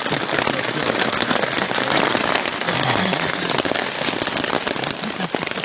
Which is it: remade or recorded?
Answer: recorded